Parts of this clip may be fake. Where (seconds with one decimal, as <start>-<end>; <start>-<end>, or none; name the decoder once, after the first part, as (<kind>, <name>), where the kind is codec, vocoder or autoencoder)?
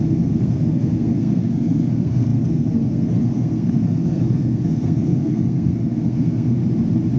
0.0-6.6 (codec, SNAC)